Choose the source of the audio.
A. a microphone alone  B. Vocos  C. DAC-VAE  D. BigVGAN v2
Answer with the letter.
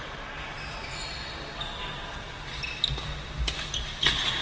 A